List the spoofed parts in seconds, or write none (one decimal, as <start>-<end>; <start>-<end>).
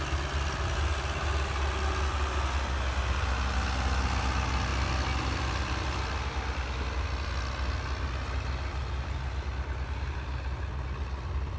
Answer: none